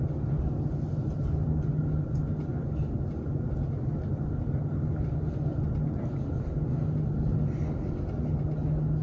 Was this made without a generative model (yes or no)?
yes